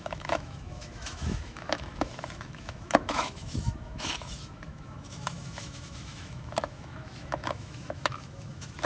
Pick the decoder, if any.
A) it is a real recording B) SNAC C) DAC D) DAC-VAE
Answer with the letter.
D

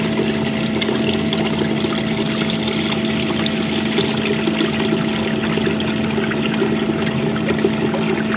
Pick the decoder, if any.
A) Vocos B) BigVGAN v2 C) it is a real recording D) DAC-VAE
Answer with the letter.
C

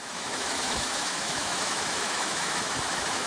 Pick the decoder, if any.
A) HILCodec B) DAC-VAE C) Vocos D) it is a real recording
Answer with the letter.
B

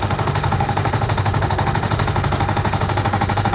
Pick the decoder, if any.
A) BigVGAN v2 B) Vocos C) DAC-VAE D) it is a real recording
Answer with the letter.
C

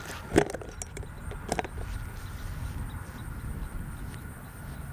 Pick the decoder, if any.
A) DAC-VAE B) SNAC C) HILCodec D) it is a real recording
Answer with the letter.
D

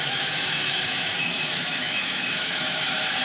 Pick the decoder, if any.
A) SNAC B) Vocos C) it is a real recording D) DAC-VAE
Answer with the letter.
D